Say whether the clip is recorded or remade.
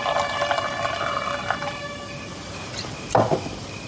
recorded